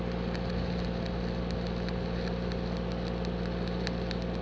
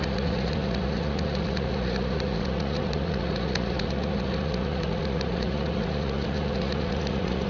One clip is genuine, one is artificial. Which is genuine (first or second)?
first